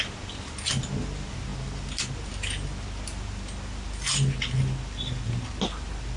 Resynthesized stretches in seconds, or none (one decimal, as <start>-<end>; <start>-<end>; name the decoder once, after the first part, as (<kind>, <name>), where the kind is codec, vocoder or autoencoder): none